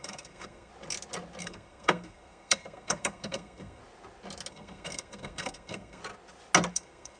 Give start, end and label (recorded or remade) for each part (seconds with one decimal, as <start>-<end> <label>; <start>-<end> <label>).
0.0-0.7 remade; 0.7-1.4 recorded; 1.4-3.8 remade; 3.8-4.5 recorded; 4.5-6.0 remade; 6.0-6.7 recorded; 6.7-7.2 remade